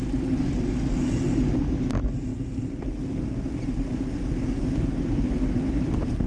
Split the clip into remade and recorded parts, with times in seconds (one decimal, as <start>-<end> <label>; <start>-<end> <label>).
0.0-0.6 remade; 0.6-6.3 recorded